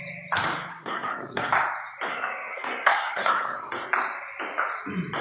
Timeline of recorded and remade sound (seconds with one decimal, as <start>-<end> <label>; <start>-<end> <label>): 0.0-0.7 recorded; 0.7-1.5 remade; 1.5-2.1 recorded; 2.1-3.7 remade; 3.7-5.2 recorded